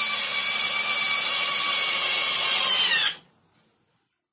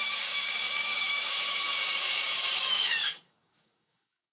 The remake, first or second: second